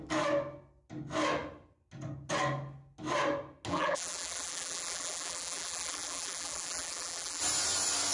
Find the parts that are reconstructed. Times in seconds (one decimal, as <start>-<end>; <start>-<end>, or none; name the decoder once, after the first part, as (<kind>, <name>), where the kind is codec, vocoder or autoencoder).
3.7-7.4 (vocoder, BigVGAN v2)